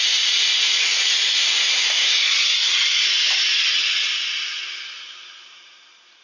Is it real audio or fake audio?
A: real